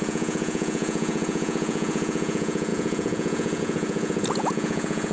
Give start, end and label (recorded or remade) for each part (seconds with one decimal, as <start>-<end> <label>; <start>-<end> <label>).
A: 0.0-5.1 remade